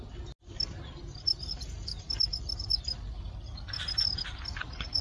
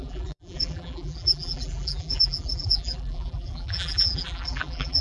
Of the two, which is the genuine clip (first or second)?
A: first